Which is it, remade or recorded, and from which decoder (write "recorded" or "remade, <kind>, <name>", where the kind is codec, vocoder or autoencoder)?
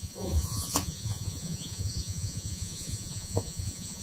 remade, vocoder, Vocos